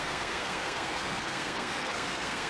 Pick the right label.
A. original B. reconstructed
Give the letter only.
B